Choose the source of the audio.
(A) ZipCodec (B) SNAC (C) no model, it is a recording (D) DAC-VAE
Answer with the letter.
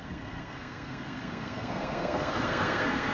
B